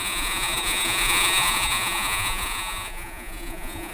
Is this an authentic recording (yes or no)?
no